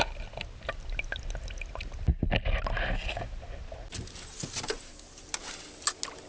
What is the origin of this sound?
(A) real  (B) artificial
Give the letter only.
A